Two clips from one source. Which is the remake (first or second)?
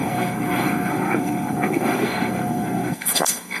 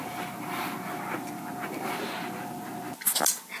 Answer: first